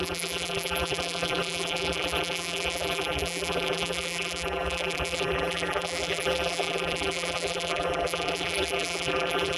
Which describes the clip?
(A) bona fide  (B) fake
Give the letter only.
B